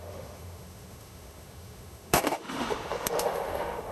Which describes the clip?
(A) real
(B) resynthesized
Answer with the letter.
B